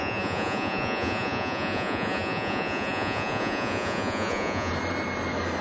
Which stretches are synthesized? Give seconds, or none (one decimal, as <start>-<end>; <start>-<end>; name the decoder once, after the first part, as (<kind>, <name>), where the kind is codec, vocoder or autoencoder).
0.0-4.7 (vocoder, Vocos)